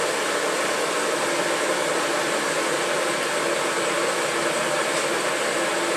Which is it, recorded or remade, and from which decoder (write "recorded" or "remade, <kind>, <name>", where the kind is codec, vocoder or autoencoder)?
recorded